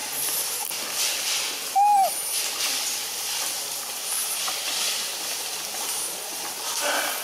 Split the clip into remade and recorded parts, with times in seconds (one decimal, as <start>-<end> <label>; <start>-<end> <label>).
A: 0.0-2.0 recorded; 2.0-6.3 remade; 6.3-7.2 recorded